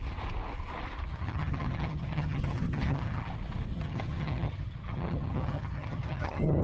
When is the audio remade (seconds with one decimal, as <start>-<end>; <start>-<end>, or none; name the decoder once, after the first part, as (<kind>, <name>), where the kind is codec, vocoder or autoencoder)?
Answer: 1.1-3.3 (vocoder, HiFi-GAN); 3.7-6.6